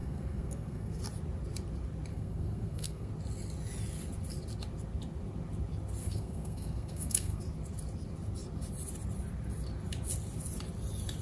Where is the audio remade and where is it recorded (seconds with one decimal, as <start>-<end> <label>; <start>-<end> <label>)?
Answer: 0.0-1.0 remade; 1.0-2.1 recorded; 2.1-3.1 remade; 3.1-6.0 recorded; 6.0-7.4 remade; 7.4-11.2 recorded